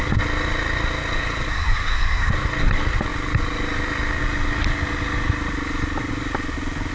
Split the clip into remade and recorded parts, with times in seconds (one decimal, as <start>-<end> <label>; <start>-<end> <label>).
0.0-1.5 recorded; 1.5-2.3 remade; 2.3-6.9 recorded